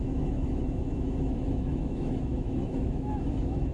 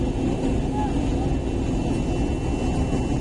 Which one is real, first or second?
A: second